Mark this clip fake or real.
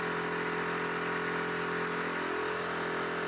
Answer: real